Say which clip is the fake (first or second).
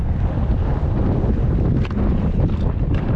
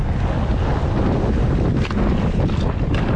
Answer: first